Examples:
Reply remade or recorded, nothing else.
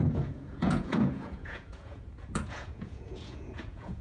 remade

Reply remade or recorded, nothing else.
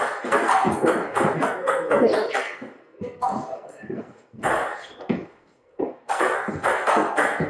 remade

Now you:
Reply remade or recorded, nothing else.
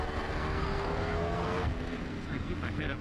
remade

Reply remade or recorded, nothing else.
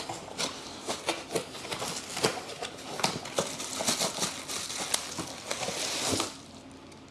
recorded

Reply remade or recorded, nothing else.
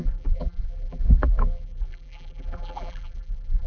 remade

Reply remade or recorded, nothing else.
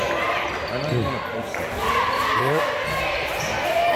recorded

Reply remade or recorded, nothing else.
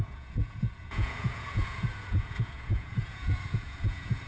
remade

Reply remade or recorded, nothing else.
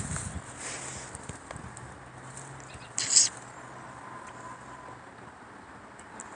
recorded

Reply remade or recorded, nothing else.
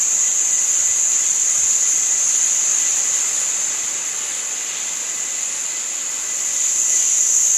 recorded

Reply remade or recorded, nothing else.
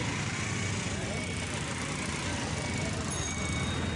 recorded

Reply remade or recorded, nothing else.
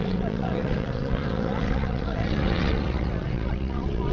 remade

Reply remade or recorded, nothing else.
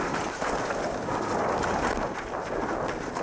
recorded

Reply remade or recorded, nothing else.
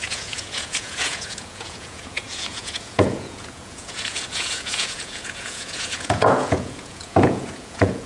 remade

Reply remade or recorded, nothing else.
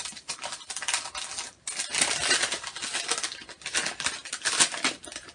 recorded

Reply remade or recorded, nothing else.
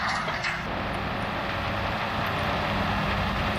recorded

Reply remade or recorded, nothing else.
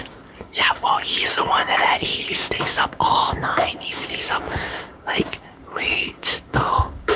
remade